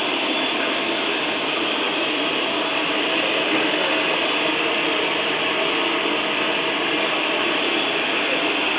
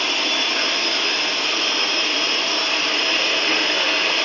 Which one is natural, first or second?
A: second